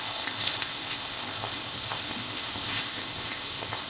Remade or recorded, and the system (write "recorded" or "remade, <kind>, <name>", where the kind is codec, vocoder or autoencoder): remade, codec, ZipCodec